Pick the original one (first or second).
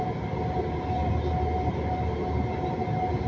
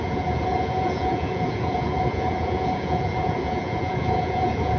first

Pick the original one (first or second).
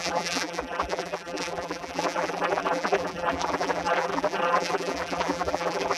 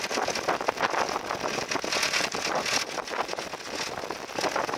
second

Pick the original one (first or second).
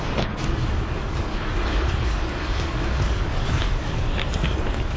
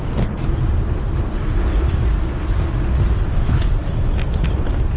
second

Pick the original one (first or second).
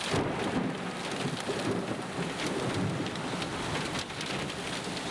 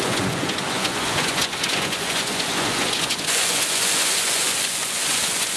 first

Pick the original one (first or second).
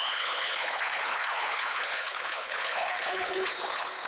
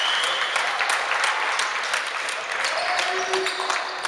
second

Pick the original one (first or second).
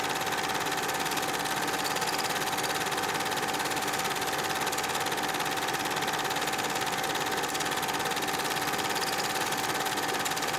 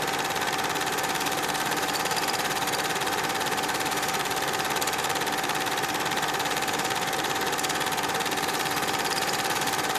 first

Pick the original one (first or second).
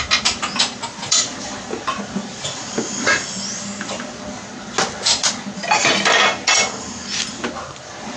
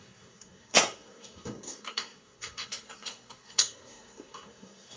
first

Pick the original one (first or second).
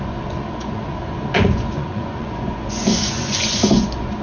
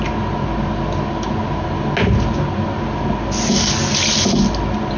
second